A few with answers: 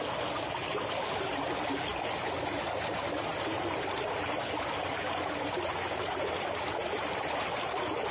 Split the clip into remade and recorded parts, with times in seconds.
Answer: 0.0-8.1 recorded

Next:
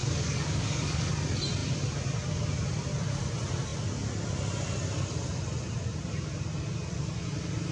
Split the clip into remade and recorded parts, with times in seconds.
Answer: 0.0-1.1 remade; 1.1-7.7 recorded

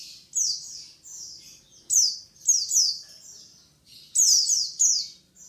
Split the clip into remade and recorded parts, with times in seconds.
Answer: 0.0-5.5 recorded

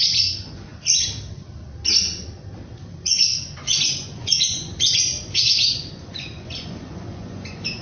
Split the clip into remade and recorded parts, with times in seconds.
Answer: 0.0-0.7 remade; 0.7-2.8 recorded; 2.8-7.8 remade